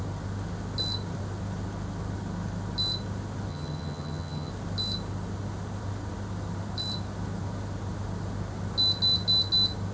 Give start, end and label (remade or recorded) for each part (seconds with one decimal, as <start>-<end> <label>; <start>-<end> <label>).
0.0-3.5 recorded; 3.5-4.5 remade; 4.5-9.9 recorded